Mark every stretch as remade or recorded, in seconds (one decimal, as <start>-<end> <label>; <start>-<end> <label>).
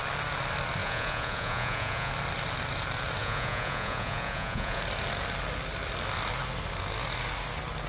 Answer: 0.0-0.8 recorded; 0.8-2.1 remade; 2.1-3.2 recorded; 3.2-4.8 remade; 4.8-7.9 recorded